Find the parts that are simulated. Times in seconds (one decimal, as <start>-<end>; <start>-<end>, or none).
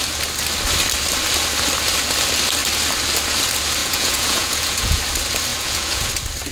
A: 3.8-5.0; 5.5-6.1